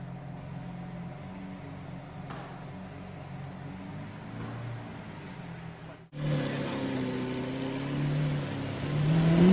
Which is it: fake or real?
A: real